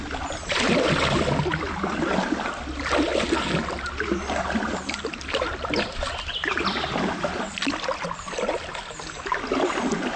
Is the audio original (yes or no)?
yes